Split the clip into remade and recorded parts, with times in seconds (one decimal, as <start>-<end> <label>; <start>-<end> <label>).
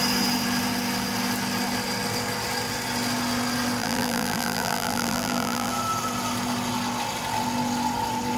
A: 0.0-3.8 recorded; 3.8-5.7 remade; 5.7-8.4 recorded